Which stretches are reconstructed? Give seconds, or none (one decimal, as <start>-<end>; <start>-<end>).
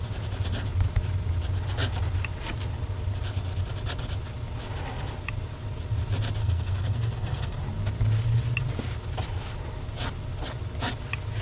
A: 6.4-7.6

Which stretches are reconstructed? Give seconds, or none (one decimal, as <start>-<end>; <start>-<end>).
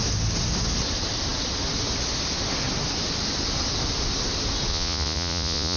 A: 4.7-5.8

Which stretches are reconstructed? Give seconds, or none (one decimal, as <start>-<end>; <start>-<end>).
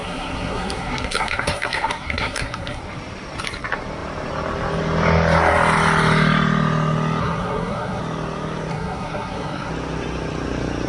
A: 0.0-2.8; 7.2-8.0; 8.7-9.7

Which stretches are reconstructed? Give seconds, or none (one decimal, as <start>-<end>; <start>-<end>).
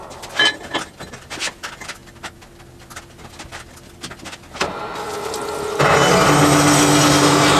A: none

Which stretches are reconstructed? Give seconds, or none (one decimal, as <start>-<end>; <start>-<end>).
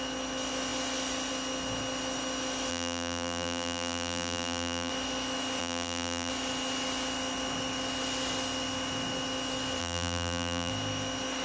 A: 2.7-4.9; 5.6-6.3; 9.8-10.7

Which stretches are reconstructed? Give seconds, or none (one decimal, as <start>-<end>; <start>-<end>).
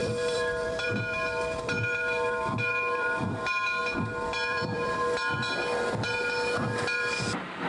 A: 0.0-7.7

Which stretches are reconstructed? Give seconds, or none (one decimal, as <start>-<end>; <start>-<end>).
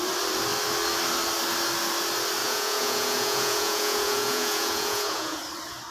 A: 2.4-5.4